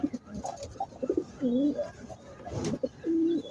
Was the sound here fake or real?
real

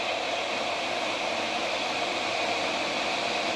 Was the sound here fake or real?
real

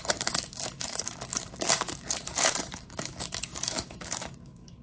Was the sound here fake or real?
fake